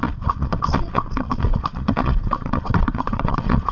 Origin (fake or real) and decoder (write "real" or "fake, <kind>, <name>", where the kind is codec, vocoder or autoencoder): fake, vocoder, Vocos